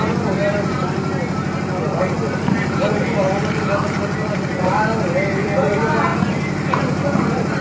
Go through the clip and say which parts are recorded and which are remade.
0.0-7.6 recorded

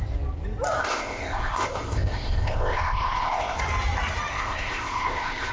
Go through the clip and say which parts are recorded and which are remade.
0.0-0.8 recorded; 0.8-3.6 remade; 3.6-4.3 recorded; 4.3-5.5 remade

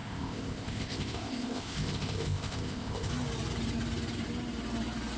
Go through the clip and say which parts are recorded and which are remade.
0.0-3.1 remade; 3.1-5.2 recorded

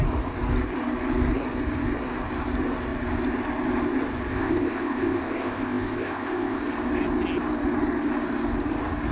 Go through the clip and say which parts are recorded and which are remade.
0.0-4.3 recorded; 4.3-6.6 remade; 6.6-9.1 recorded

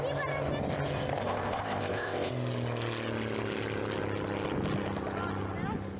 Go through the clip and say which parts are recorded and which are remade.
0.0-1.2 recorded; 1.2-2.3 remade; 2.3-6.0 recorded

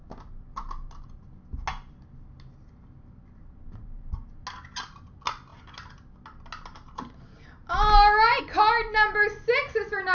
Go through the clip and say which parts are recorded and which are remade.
0.0-10.1 recorded